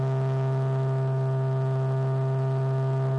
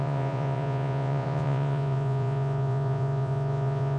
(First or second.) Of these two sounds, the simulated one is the second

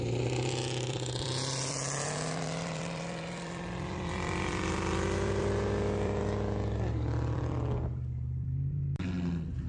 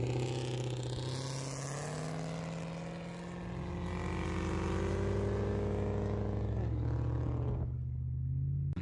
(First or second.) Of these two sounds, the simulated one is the first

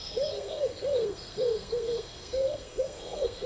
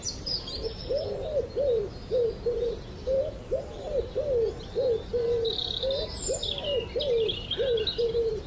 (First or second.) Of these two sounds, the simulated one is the first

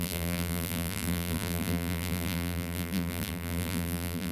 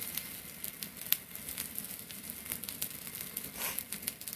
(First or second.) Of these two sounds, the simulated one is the first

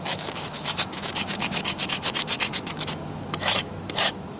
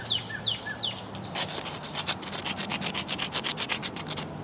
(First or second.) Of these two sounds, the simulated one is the first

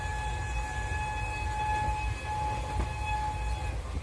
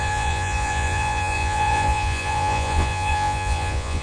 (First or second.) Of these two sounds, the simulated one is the second